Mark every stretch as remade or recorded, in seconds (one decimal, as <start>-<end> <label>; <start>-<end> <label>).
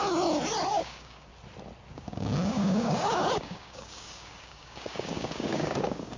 0.0-0.7 recorded; 0.7-1.3 remade; 1.3-1.9 recorded; 1.9-6.2 remade